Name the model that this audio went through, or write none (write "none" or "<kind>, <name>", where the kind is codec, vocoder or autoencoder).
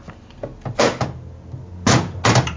none